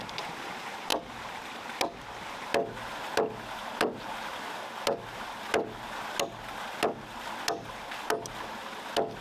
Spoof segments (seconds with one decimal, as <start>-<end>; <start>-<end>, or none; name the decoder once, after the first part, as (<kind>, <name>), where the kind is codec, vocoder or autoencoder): none